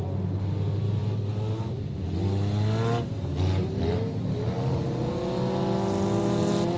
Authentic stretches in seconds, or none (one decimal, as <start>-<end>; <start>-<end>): 0.0-6.8